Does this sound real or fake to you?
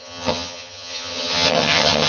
fake